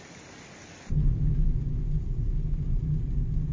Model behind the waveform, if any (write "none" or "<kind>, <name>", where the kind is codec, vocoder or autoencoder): none